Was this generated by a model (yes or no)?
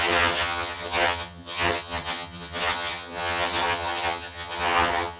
yes